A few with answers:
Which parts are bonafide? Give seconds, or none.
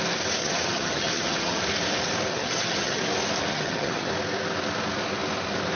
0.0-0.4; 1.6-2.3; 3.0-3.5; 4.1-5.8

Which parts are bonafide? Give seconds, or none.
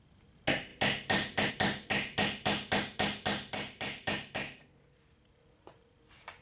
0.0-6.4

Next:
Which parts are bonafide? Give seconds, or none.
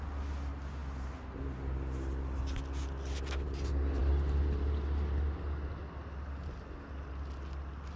0.0-8.0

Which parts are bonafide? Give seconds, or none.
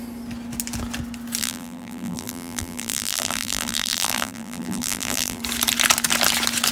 0.0-1.4; 5.4-6.7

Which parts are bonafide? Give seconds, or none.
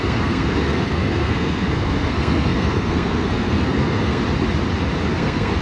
4.2-5.1